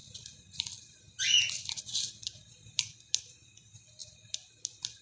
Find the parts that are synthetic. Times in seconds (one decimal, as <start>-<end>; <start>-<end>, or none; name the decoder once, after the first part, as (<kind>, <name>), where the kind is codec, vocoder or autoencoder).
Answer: none

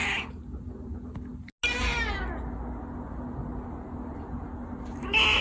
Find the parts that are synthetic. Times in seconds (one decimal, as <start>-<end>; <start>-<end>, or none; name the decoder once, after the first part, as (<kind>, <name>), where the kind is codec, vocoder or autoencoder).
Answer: none

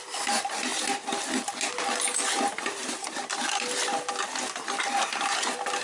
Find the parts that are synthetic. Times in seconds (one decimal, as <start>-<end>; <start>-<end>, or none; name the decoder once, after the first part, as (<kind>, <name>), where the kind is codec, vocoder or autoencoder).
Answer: 2.8-4.9 (vocoder, BigVGAN v2)

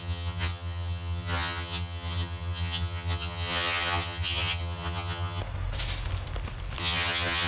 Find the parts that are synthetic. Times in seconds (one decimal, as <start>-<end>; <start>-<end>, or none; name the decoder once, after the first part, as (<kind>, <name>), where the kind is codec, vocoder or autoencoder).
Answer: 0.0-5.4 (vocoder, HiFi-GAN); 6.8-7.5

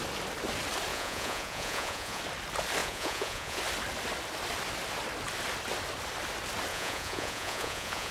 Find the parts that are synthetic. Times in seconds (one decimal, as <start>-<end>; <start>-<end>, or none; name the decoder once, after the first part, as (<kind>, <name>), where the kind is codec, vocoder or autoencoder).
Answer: 0.9-2.2 (vocoder, Vocos); 2.8-3.6; 6.7-8.1

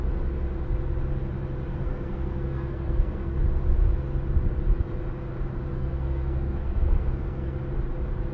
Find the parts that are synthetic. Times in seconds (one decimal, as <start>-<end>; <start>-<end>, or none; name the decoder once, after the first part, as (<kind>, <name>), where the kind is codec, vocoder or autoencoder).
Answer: 1.7-3.4 (codec, SNAC); 5.7-7.6

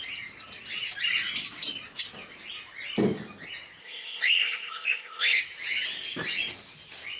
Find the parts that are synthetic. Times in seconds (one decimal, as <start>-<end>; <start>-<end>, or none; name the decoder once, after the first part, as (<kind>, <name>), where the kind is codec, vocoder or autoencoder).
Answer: 3.8-5.4 (codec, ZipCodec)

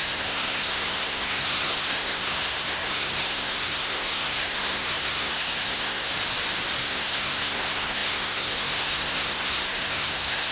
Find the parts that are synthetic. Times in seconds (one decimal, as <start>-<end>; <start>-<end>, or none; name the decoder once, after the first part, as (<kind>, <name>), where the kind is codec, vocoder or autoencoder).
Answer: 0.0-6.1 (codec, SNAC); 6.8-10.5